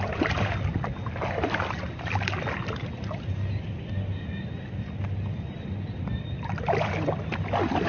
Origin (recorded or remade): recorded